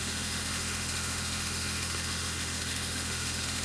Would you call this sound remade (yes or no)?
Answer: yes